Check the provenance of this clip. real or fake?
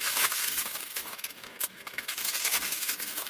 fake